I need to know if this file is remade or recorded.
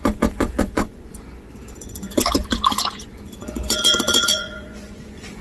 remade